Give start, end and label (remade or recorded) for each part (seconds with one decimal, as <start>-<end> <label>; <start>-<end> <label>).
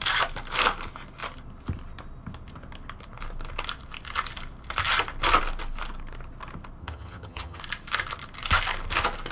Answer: 0.0-6.8 recorded; 6.8-7.6 remade; 7.6-9.3 recorded